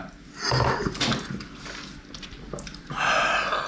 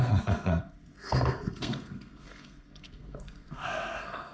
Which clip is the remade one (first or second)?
second